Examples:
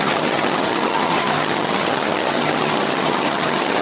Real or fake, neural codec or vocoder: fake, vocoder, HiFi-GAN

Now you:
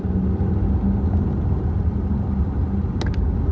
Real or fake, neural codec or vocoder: real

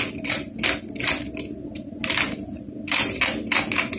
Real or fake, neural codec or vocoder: real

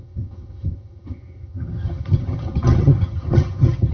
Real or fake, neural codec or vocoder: fake, vocoder, HiFi-GAN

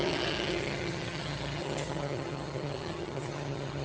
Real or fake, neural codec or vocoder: fake, vocoder, HiFi-GAN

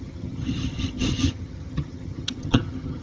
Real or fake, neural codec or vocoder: fake, vocoder, HiFi-GAN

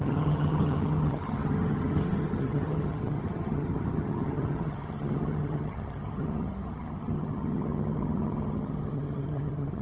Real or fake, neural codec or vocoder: fake, vocoder, HiFi-GAN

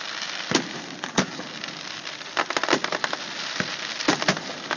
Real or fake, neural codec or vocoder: real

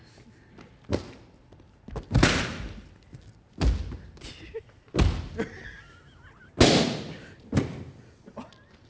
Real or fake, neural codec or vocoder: real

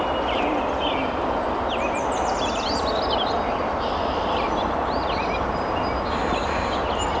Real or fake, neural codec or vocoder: real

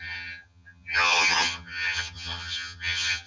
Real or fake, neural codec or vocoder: fake, vocoder, HiFi-GAN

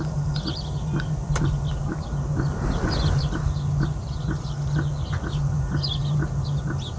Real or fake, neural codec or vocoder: real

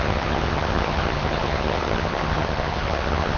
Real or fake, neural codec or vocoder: fake, vocoder, HiFi-GAN